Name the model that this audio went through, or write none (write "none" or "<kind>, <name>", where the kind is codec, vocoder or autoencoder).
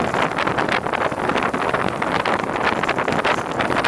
none